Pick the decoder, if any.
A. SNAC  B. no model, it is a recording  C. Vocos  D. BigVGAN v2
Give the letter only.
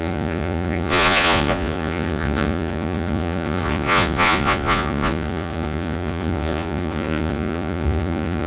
C